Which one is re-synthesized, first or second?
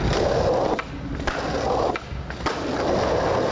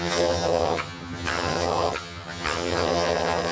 second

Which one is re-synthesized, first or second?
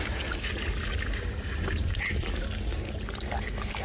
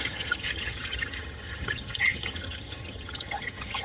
second